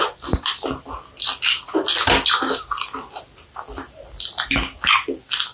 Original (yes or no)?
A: yes